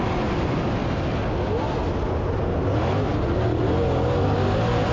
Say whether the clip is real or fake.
real